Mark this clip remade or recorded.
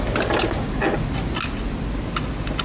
recorded